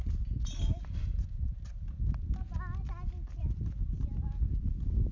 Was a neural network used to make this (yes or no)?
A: no